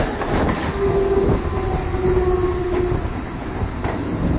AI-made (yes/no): no